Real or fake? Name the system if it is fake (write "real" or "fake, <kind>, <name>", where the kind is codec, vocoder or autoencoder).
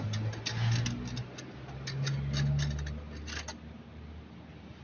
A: real